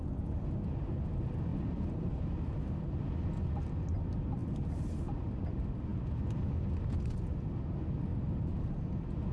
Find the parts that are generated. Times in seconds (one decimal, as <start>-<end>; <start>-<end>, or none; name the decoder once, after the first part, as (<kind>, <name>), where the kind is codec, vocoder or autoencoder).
1.5-2.8 (vocoder, BigVGAN v2); 4.4-4.9